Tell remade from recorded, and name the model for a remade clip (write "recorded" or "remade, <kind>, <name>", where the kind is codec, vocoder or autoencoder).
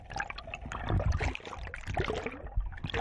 recorded